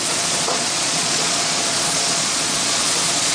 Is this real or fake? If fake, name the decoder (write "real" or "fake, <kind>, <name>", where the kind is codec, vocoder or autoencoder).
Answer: fake, vocoder, Vocos